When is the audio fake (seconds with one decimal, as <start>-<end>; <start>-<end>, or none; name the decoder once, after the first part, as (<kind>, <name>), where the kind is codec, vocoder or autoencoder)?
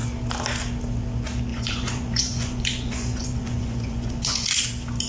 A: 1.5-4.6 (vocoder, Vocos)